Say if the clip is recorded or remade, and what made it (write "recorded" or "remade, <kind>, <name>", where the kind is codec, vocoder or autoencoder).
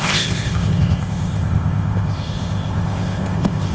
remade, codec, ZipCodec